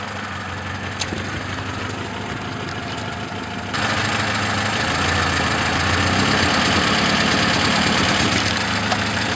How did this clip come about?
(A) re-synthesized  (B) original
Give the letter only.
B